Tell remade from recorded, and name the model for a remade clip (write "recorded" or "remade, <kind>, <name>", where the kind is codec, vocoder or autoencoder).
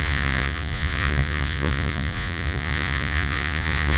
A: remade, vocoder, Vocos